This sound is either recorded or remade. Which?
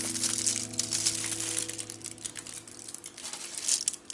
recorded